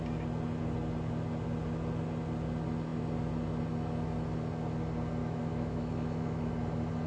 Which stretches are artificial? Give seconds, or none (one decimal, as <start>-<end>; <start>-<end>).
5.2-6.5